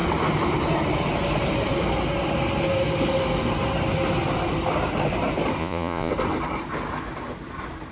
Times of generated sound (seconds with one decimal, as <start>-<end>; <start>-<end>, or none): 5.6-6.1